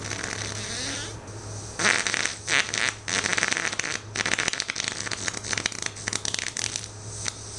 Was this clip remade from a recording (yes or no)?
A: no